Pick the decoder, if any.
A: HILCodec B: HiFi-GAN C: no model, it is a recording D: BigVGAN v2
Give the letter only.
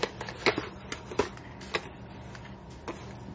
C